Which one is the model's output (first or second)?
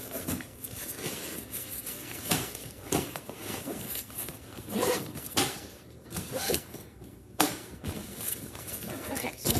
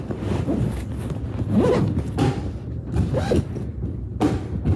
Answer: first